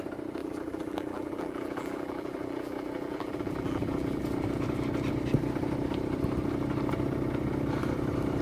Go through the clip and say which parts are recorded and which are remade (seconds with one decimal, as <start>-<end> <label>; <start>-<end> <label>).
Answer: 0.0-0.4 recorded; 0.4-4.2 remade; 4.2-8.4 recorded